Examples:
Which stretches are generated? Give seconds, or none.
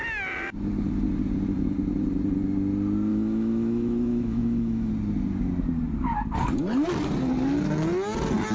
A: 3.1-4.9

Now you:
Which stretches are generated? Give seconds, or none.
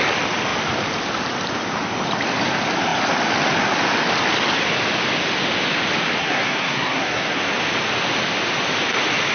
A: 6.2-7.4